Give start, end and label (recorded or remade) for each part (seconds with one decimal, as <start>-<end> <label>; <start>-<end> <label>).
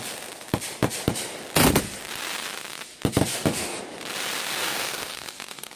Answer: 0.0-3.3 recorded; 3.3-3.8 remade; 3.8-4.6 recorded; 4.6-5.8 remade